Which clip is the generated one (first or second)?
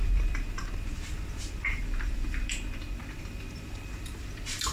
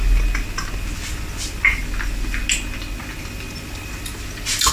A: first